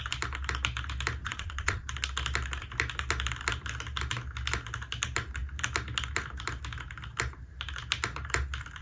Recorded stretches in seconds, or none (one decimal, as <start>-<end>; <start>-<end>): 0.0-1.2; 1.9-8.8